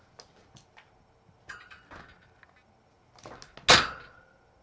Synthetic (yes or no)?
no